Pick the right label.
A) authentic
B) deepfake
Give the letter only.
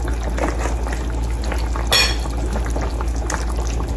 A